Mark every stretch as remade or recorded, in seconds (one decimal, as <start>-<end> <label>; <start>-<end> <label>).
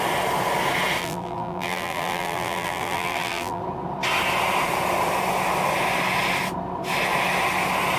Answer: 0.0-1.0 recorded; 1.0-3.6 remade; 3.6-8.0 recorded